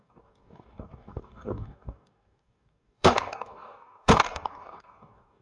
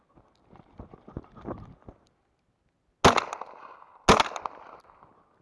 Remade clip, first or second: first